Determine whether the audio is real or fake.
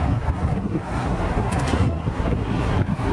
fake